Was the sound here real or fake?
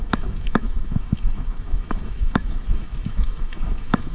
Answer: fake